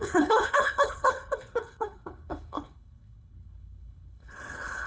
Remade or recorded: remade